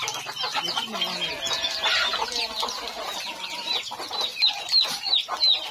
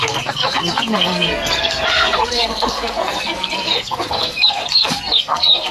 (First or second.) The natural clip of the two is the first